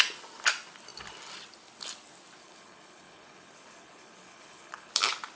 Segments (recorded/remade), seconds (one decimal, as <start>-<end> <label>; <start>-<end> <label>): 0.0-2.4 recorded; 2.4-4.9 remade; 4.9-5.4 recorded